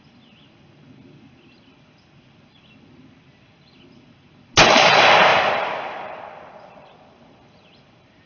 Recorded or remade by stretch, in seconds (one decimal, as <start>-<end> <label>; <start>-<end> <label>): 0.0-5.3 recorded; 5.3-7.2 remade; 7.2-8.3 recorded